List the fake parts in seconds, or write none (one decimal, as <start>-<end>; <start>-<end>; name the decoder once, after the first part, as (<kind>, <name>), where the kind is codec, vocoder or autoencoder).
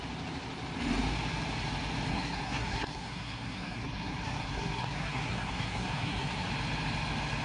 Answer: 2.1-6.5 (codec, SNAC)